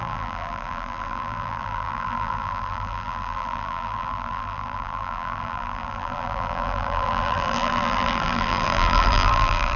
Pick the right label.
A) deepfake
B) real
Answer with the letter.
A